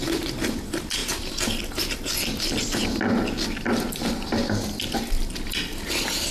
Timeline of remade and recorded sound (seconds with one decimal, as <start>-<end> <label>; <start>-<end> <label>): 0.0-6.3 recorded